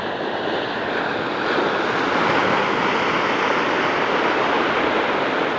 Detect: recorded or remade recorded